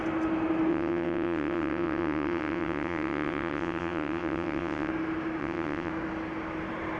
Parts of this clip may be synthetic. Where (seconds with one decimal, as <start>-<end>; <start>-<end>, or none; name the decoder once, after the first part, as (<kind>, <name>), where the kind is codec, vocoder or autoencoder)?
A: 0.7-4.9 (vocoder, WaveNeXt); 5.4-5.9